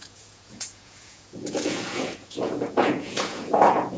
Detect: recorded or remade remade